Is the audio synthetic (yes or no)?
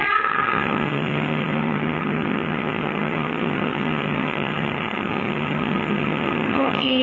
yes